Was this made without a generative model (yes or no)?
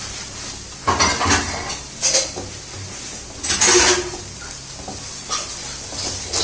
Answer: yes